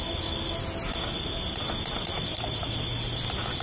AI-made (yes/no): no